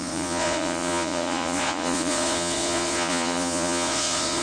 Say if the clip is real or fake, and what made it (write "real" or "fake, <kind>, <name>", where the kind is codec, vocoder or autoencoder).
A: fake, vocoder, Vocos